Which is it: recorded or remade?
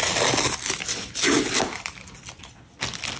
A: recorded